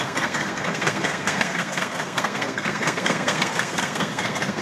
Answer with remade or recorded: remade